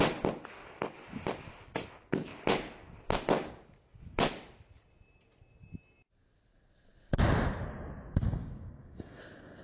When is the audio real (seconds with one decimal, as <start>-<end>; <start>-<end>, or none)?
0.0-8.4; 9.2-9.6